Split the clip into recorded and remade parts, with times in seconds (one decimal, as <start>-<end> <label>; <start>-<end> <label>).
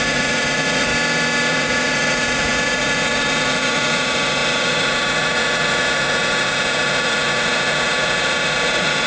0.0-0.9 remade; 0.9-1.5 recorded; 1.5-9.1 remade